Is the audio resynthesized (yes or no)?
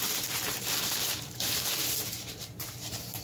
yes